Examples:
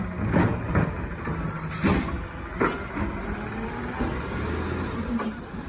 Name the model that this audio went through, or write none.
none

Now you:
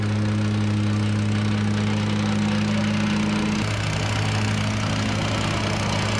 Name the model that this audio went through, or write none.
none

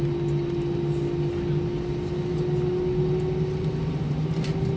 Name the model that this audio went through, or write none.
none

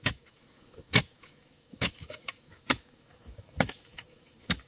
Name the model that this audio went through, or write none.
autoencoder, DAC-VAE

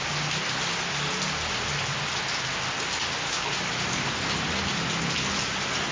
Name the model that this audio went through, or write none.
none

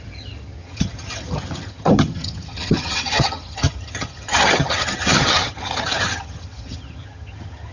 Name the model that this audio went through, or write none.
vocoder, HiFi-GAN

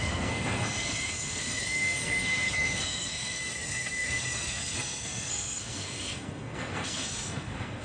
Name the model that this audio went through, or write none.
codec, SNAC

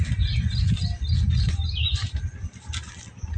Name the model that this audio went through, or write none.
none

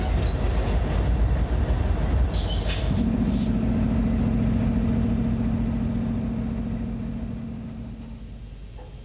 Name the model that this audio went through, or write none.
none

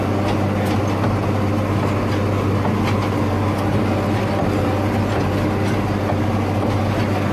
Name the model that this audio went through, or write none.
none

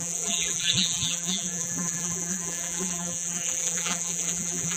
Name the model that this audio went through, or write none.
vocoder, BigVGAN v2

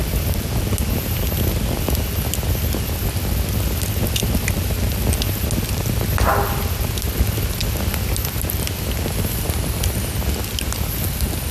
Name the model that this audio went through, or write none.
none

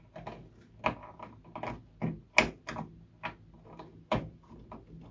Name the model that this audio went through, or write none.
none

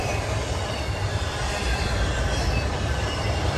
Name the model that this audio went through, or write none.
vocoder, BigVGAN v2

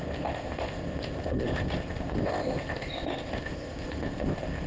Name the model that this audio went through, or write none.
codec, ZipCodec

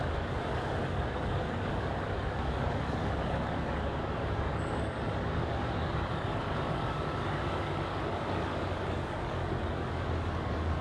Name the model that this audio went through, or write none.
codec, DAC